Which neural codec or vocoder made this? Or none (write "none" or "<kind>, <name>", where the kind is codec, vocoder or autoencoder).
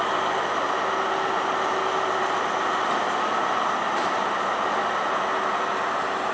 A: none